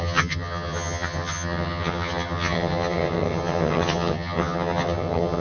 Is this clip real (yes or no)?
no